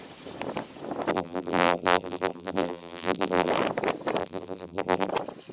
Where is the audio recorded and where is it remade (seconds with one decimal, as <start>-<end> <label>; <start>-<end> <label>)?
0.0-1.1 recorded; 1.1-3.5 remade; 3.5-4.2 recorded; 4.2-5.1 remade; 5.1-5.5 recorded